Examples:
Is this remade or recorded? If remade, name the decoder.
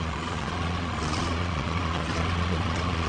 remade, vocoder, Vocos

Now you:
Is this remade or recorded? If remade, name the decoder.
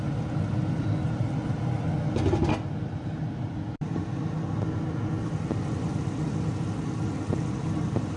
recorded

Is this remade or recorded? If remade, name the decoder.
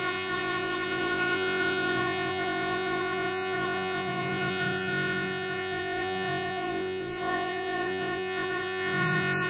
remade, vocoder, Vocos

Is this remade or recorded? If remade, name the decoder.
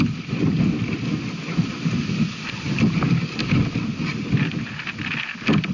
recorded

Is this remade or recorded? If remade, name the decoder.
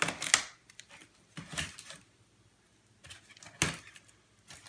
recorded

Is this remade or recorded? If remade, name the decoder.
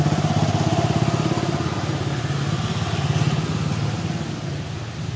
recorded